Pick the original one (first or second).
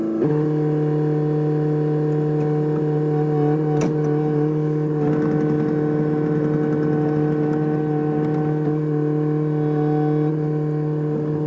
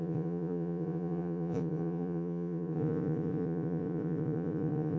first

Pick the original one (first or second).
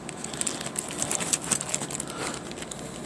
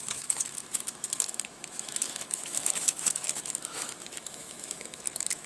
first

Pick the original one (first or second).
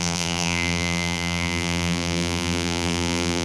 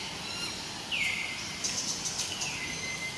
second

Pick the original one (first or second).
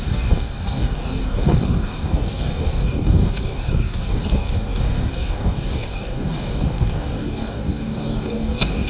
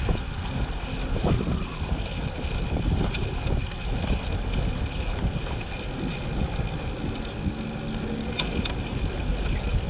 second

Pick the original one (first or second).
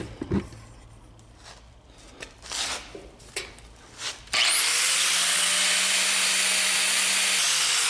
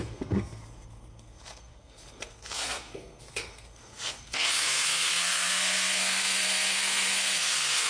first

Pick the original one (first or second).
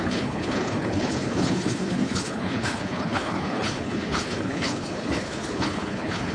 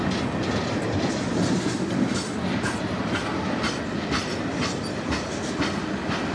second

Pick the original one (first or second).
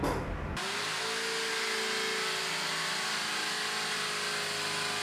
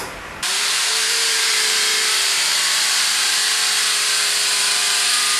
first